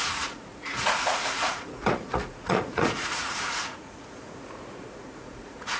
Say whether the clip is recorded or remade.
remade